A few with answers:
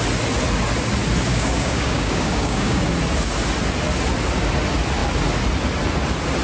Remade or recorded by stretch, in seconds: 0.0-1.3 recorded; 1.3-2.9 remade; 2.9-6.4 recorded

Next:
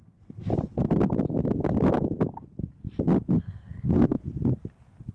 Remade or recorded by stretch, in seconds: 0.0-0.5 remade; 0.5-3.4 recorded; 3.4-4.2 remade; 4.2-5.1 recorded

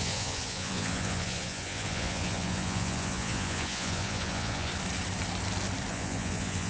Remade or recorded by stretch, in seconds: 0.0-4.7 remade; 4.7-5.9 recorded; 5.9-6.7 remade

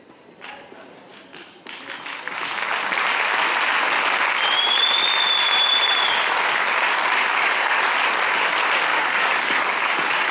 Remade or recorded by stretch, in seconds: 0.0-7.3 recorded; 7.3-7.8 remade; 7.8-8.9 recorded; 8.9-10.3 remade

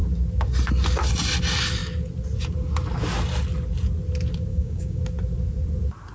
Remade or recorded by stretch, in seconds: 0.0-4.5 recorded; 4.5-5.0 remade; 5.0-6.1 recorded

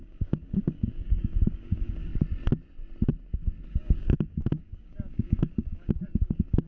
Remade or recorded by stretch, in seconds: 0.0-2.1 remade; 2.1-3.7 recorded; 3.7-6.7 remade